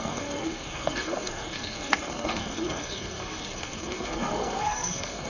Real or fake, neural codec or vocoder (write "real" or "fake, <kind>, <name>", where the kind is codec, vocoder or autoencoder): fake, codec, SNAC